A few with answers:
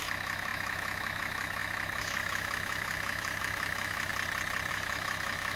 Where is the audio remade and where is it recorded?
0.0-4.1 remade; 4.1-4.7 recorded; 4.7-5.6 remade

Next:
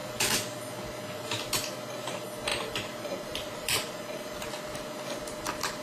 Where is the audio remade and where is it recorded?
0.0-2.5 recorded; 2.5-4.5 remade; 4.5-5.8 recorded

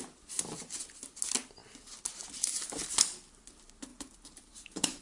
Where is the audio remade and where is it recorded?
0.0-3.9 recorded; 3.9-5.0 remade

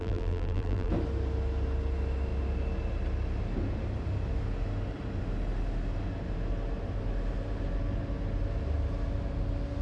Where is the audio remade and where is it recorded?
0.0-0.9 remade; 0.9-9.8 recorded

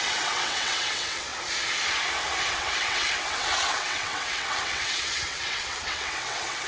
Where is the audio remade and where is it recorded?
0.0-1.3 remade; 1.3-2.5 recorded; 2.5-6.7 remade

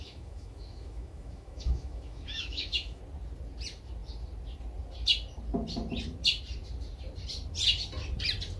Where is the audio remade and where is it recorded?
0.0-3.0 remade; 3.0-8.6 recorded

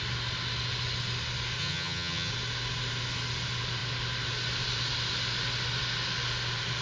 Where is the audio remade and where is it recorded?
0.0-1.6 recorded; 1.6-2.3 remade; 2.3-6.8 recorded

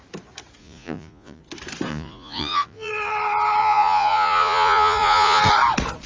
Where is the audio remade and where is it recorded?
0.0-0.6 recorded; 0.6-1.4 remade; 1.4-1.9 recorded; 1.9-2.9 remade; 2.9-3.6 recorded; 3.6-5.4 remade; 5.4-6.1 recorded